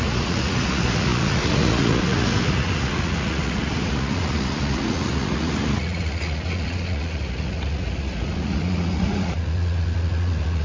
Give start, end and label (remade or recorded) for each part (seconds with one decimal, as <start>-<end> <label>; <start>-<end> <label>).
0.0-10.6 remade